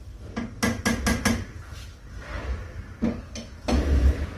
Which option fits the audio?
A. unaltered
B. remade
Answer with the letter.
A